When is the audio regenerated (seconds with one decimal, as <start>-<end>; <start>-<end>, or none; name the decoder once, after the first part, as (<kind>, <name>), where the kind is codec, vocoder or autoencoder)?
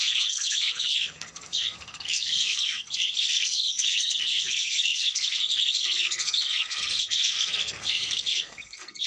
0.0-9.1 (codec, SNAC)